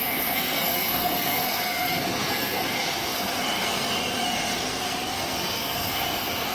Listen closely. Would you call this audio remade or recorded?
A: remade